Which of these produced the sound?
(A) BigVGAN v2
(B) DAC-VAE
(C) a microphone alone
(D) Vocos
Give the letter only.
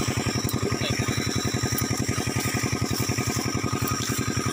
C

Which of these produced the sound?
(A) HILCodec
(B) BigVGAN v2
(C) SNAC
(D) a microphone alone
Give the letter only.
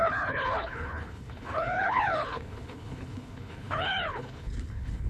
A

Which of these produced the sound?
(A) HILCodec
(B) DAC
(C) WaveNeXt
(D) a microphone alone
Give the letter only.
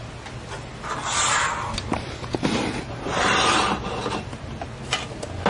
D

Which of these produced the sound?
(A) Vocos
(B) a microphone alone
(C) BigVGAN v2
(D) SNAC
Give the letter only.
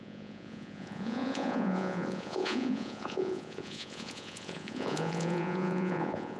A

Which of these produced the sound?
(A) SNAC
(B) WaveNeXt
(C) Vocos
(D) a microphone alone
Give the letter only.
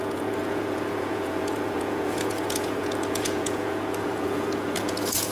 C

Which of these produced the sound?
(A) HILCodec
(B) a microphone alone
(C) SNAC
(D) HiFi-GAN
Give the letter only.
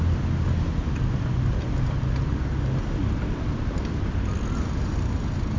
B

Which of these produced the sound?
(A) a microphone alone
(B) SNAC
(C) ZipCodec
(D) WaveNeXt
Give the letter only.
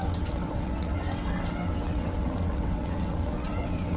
D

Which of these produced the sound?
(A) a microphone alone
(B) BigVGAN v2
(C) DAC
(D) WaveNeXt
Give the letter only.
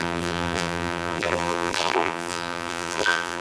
B